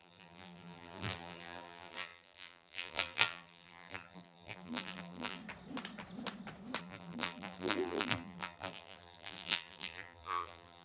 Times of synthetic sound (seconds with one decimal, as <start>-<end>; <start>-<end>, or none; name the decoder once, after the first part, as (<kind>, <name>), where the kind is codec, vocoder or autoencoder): 0.0-5.4 (vocoder, BigVGAN v2); 6.8-10.8